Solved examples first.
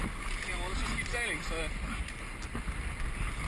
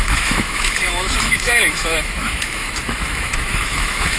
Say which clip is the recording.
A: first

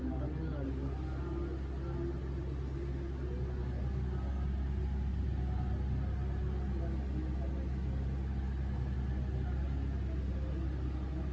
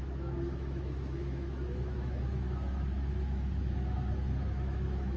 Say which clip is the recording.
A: first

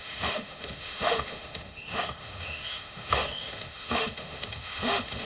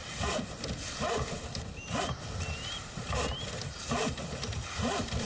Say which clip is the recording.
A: second